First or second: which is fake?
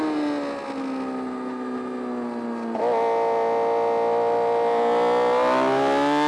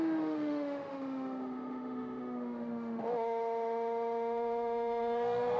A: second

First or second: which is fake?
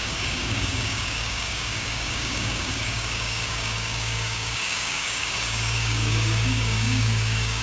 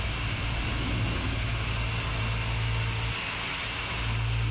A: first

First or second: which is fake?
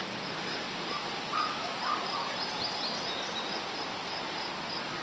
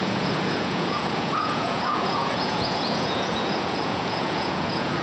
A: second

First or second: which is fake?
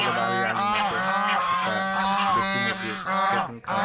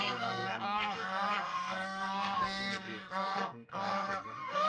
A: second